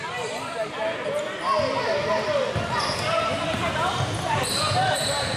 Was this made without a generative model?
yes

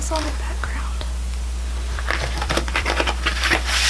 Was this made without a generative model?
no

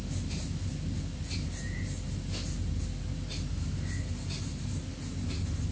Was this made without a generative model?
yes